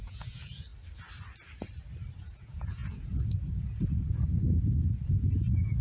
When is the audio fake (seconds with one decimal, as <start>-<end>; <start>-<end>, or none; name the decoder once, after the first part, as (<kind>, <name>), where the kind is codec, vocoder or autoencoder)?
0.0-0.7 (vocoder, Vocos); 2.2-5.8